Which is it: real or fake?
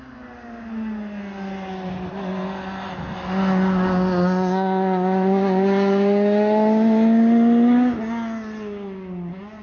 real